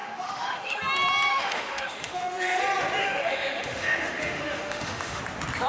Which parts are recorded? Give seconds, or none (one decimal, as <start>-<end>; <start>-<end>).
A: 0.8-1.3; 2.6-3.0; 5.2-5.7